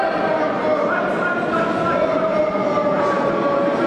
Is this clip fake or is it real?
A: real